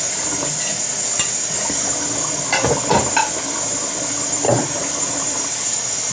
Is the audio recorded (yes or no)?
yes